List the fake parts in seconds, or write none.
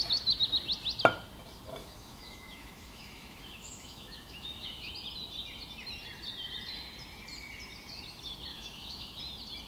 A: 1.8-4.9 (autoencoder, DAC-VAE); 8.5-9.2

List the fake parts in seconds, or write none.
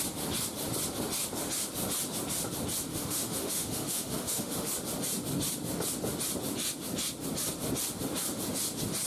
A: 2.9-4.7 (autoencoder, DAC-VAE)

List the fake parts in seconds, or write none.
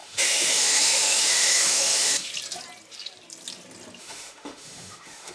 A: 0.0-2.3 (autoencoder, DAC-VAE); 4.0-5.3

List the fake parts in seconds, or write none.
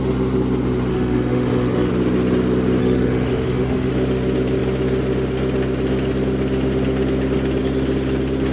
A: 0.9-1.9 (autoencoder, DAC-VAE); 2.8-3.9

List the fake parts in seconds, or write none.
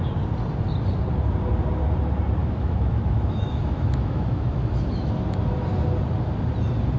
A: 2.4-5.1 (autoencoder, DAC-VAE)